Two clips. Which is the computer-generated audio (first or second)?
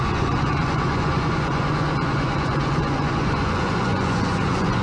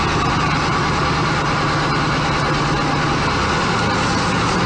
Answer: first